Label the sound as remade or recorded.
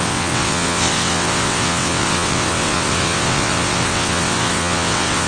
remade